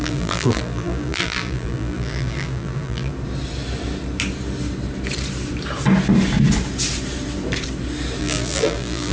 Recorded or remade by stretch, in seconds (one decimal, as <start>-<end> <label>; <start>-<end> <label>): 0.0-3.1 remade; 3.1-8.2 recorded; 8.2-9.1 remade